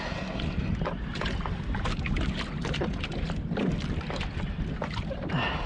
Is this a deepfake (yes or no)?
no